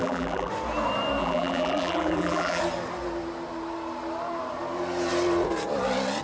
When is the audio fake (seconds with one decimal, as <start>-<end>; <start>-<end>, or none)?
0.0-0.5; 1.2-2.6